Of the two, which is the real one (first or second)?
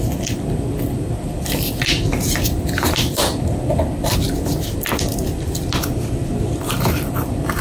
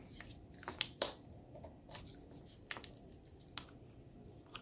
second